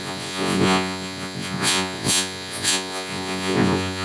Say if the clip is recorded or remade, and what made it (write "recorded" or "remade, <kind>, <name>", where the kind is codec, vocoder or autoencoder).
remade, vocoder, Vocos